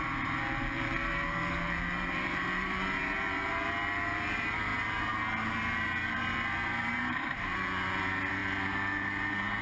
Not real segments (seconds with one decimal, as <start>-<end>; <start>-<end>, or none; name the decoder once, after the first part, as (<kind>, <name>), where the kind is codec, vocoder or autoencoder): 0.0-4.7 (vocoder, BigVGAN v2); 5.4-9.6